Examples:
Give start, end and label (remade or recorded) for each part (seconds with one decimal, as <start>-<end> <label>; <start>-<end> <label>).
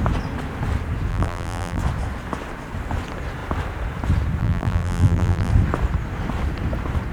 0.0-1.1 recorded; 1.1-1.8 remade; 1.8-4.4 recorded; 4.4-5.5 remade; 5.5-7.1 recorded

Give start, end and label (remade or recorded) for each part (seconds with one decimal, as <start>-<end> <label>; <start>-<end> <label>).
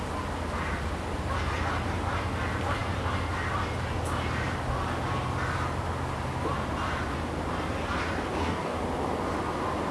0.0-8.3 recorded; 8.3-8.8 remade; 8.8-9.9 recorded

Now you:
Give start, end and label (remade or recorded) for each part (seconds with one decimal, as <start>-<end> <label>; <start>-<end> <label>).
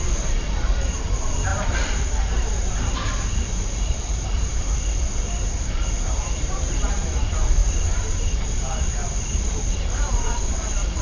0.0-11.0 remade